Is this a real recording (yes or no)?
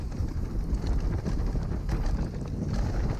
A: yes